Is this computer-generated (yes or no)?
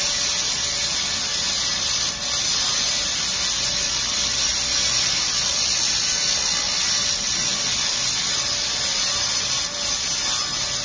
no